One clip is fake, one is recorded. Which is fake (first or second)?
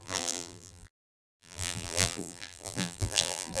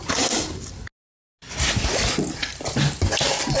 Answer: first